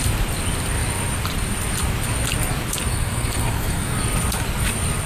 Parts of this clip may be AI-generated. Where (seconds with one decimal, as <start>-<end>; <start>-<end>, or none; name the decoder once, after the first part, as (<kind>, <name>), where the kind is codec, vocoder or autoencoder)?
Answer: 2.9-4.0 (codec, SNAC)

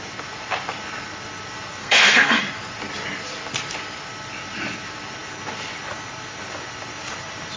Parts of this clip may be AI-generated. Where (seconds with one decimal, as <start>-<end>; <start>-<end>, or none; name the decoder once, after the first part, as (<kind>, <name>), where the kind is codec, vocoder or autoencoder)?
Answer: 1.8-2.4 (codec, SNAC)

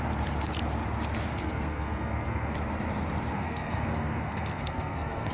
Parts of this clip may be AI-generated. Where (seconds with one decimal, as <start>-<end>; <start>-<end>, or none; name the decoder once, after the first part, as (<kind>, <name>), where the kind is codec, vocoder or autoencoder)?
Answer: 1.3-2.5 (codec, SNAC); 3.3-5.3